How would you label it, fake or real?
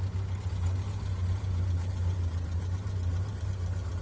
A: real